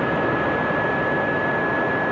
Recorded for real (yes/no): yes